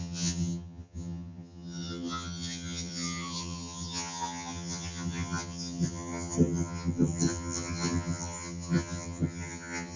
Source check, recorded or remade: remade